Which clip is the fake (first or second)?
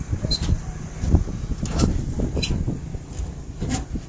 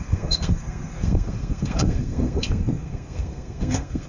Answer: second